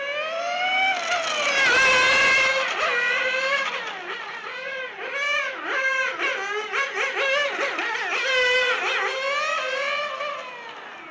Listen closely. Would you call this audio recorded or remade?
recorded